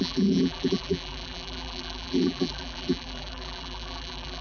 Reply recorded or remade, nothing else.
remade